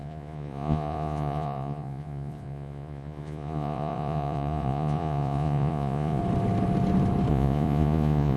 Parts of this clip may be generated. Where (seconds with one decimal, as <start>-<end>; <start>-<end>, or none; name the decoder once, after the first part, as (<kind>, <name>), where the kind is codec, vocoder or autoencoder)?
0.0-6.2 (vocoder, Vocos); 7.3-8.4